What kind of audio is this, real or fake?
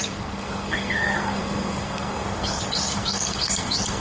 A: fake